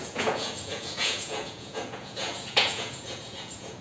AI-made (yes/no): yes